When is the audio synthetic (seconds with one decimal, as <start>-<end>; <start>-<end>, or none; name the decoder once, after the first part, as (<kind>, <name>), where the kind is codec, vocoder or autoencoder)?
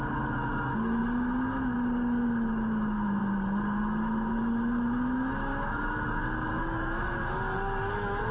0.0-1.0 (autoencoder, DAC-VAE); 2.5-3.2; 3.8-8.3